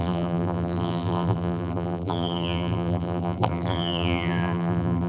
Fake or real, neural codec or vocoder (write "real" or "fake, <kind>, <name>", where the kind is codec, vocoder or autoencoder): fake, vocoder, BigVGAN v2